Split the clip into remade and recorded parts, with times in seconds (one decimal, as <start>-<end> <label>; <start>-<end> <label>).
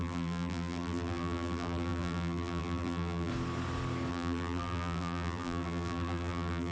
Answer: 0.0-3.3 remade; 3.3-4.1 recorded; 4.1-6.7 remade